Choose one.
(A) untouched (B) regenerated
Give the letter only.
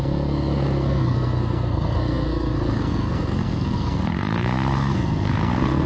B